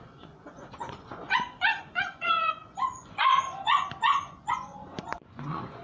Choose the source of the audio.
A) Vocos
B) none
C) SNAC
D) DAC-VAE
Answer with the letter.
A